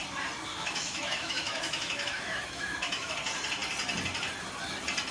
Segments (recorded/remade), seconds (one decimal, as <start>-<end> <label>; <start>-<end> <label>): 0.0-0.5 recorded; 0.5-3.1 remade; 3.1-5.1 recorded